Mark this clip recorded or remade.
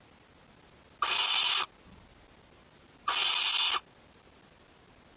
recorded